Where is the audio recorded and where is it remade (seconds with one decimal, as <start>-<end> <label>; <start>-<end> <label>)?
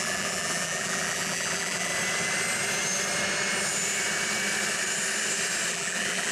0.0-1.9 remade; 1.9-5.7 recorded; 5.7-6.3 remade